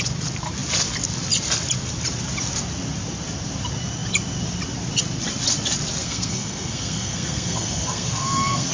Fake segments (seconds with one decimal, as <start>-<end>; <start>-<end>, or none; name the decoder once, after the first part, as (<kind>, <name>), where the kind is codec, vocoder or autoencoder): 6.0-8.7 (codec, SNAC)